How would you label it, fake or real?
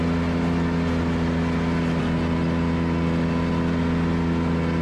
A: real